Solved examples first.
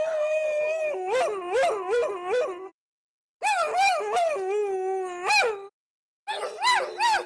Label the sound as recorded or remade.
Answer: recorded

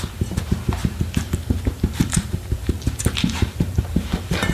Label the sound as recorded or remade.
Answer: remade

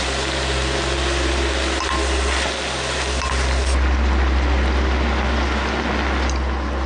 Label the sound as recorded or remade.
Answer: recorded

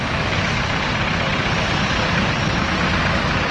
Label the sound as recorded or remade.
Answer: recorded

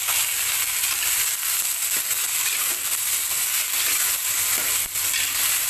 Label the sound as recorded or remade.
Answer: recorded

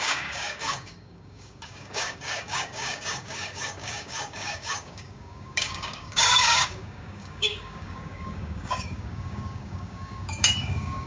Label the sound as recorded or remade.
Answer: remade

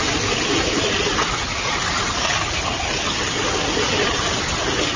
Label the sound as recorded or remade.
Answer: recorded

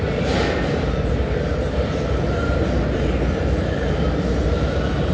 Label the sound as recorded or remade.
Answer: remade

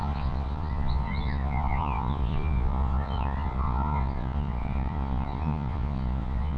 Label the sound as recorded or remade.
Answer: remade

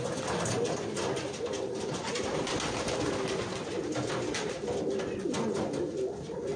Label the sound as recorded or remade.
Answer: recorded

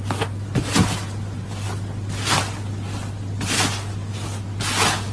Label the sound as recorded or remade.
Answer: recorded